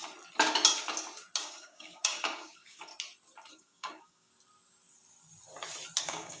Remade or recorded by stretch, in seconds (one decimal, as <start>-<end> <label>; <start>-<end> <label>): 0.0-1.4 recorded; 1.4-2.9 remade; 2.9-3.5 recorded; 3.5-4.3 remade; 4.3-6.0 recorded; 6.0-6.4 remade